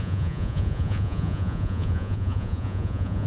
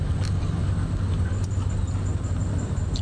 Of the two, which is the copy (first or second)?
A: first